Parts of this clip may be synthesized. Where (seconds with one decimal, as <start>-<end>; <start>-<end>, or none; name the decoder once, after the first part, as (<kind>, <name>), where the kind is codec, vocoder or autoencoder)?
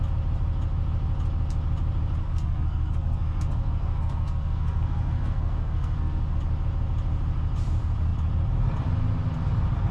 2.2-6.4 (codec, SNAC)